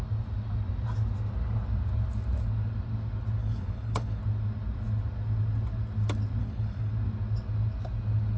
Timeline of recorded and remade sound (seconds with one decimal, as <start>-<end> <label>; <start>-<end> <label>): 0.0-3.4 recorded; 3.4-4.2 remade; 4.2-6.4 recorded; 6.4-6.9 remade; 6.9-8.4 recorded